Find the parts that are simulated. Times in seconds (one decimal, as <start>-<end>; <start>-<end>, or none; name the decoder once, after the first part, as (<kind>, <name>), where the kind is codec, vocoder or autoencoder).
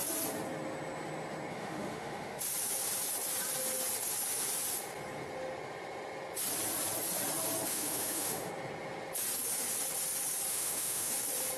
1.5-2.4 (autoencoder, DAC-VAE); 7.7-8.5; 10.5-11.1